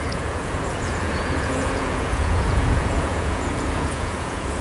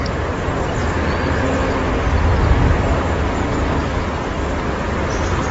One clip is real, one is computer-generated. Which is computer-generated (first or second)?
first